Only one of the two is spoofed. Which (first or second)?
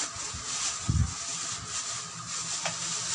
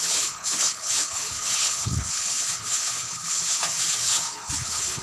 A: second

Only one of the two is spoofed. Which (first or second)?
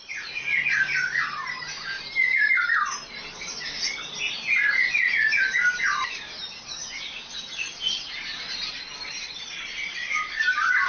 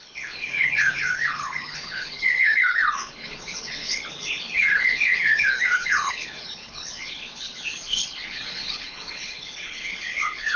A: second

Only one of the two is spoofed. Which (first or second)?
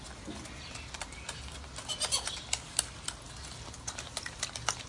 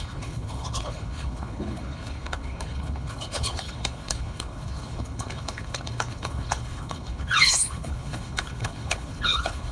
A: second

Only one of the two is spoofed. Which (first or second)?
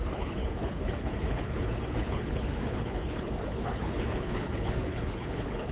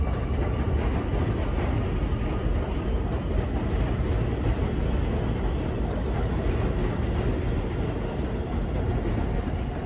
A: first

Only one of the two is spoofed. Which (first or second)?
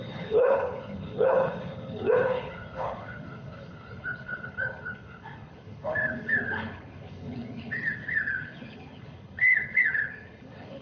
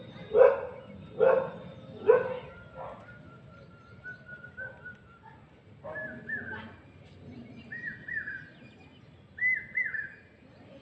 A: first